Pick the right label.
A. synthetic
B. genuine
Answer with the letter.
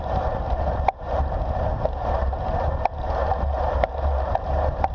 A